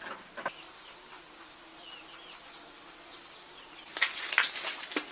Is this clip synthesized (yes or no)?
no